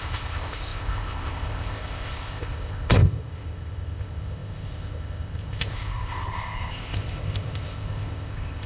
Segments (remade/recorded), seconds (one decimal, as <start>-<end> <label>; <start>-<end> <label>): 0.0-8.7 remade